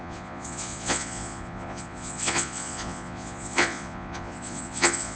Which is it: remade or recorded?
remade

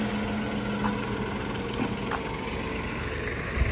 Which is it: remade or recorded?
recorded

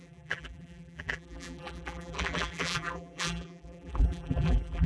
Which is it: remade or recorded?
remade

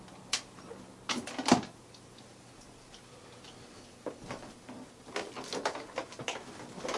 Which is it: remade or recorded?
recorded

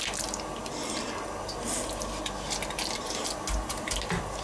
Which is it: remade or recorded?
recorded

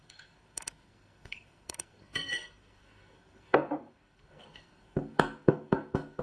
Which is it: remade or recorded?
remade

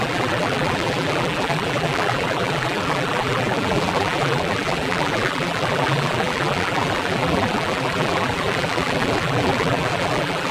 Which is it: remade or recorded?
remade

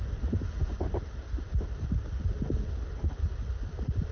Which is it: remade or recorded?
recorded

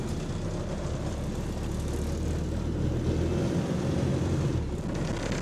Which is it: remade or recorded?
recorded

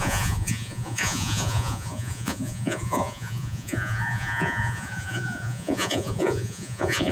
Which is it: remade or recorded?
remade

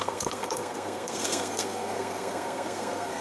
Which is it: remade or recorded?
remade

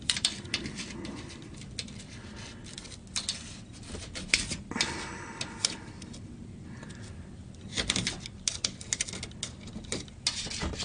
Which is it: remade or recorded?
recorded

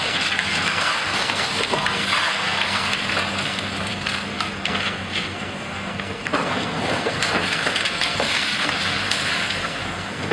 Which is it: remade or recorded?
remade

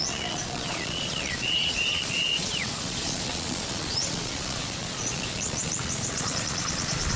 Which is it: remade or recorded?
remade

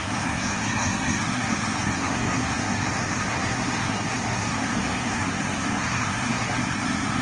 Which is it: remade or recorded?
remade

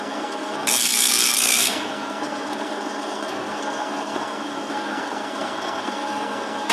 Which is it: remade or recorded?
remade